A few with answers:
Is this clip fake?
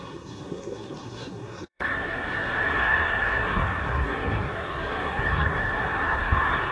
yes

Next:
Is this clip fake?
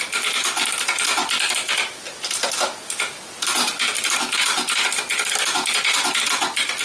no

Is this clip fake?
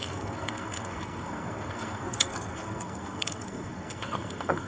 yes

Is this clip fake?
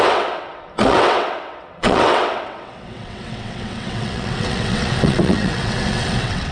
yes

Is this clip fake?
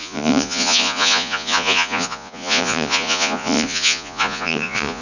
yes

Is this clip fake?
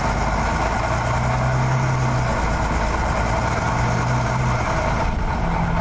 no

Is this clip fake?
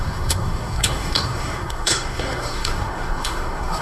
yes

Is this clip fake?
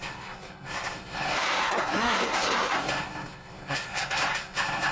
yes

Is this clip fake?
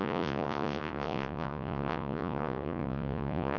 yes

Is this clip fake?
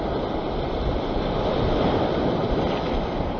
no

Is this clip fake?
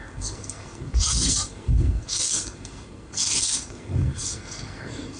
yes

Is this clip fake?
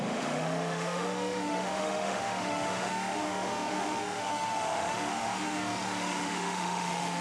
yes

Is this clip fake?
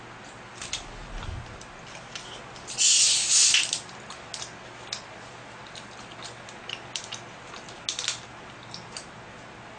no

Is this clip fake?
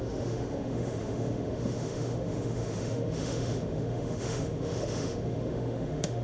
yes